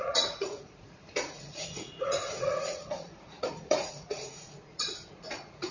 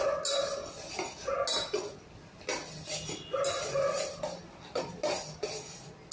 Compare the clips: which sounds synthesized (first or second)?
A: first